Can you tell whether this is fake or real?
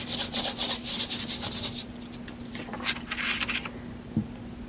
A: real